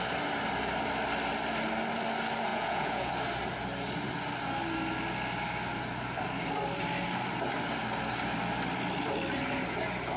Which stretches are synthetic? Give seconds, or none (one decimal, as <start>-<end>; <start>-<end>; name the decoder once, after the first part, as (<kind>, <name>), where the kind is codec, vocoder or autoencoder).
2.5-3.1 (vocoder, Vocos)